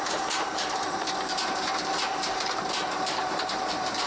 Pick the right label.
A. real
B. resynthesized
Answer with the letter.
B